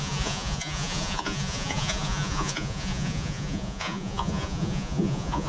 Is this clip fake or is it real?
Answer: fake